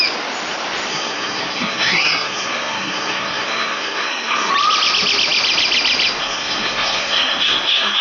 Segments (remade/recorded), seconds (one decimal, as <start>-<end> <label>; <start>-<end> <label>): 0.0-0.9 recorded; 0.9-4.5 remade; 4.5-6.2 recorded; 6.2-8.0 remade